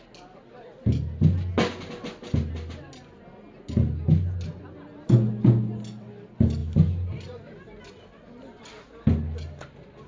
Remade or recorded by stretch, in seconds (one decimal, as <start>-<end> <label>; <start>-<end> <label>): 0.0-6.6 recorded; 6.6-7.8 remade; 7.8-10.1 recorded